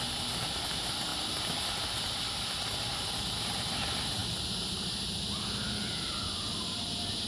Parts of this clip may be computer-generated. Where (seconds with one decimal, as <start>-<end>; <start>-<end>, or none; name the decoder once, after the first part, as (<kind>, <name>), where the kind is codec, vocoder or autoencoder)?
none